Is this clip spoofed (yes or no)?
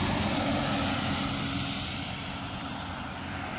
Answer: no